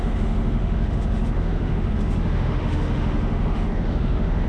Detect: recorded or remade remade